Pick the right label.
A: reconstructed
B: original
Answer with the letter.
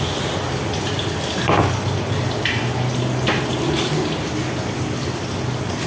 B